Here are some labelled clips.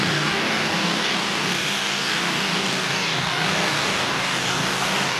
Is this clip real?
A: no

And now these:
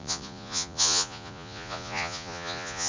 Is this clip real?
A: no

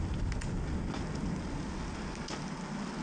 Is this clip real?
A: yes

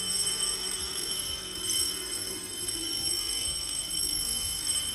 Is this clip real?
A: no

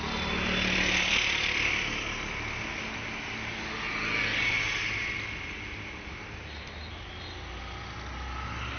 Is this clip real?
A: yes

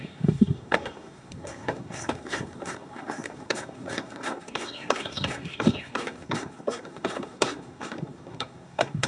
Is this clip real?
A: no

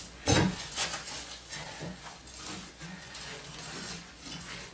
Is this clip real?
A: no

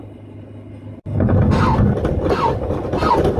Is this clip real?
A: yes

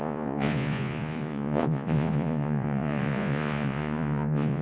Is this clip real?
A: no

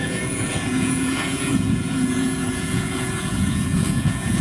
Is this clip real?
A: no